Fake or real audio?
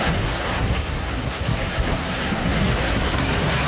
fake